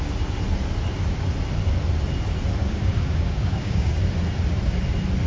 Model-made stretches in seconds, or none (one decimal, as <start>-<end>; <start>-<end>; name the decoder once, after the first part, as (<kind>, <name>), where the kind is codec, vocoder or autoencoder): 2.6-4.0 (codec, DAC)